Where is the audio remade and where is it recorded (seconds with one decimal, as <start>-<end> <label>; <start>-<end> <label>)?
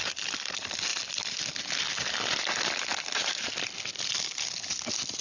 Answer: 0.0-0.9 recorded; 0.9-1.6 remade; 1.6-5.2 recorded